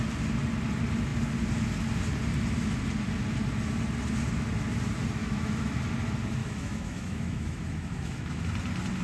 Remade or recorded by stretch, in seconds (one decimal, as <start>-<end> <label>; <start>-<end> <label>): 0.0-5.2 recorded; 5.2-5.8 remade; 5.8-6.4 recorded; 6.4-8.4 remade; 8.4-9.0 recorded